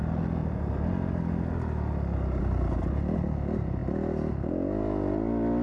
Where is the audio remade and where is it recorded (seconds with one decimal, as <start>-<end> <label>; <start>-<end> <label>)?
0.0-5.6 recorded